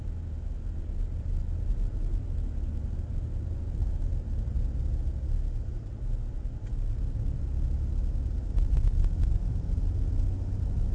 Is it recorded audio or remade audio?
recorded